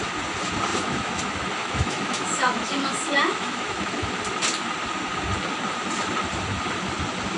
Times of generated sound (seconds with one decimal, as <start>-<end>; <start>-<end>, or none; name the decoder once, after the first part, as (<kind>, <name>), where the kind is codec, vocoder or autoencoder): 0.7-1.2 (autoencoder, DAC-VAE); 1.6-4.1